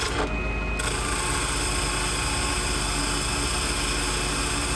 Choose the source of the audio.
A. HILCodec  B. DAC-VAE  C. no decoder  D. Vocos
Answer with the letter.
C